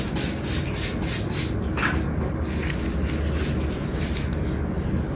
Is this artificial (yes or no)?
no